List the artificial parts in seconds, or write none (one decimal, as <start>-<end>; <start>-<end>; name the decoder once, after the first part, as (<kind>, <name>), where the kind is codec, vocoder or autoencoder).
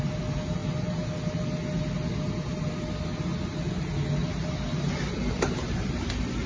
none